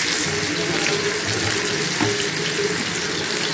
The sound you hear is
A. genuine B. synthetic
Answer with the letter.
A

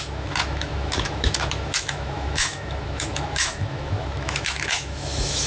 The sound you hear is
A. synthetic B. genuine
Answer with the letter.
A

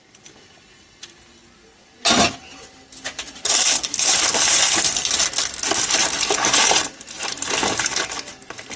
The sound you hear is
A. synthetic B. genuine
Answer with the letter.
B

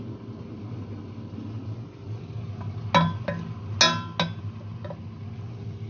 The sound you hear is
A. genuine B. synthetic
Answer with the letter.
A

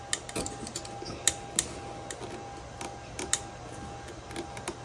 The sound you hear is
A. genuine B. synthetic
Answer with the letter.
A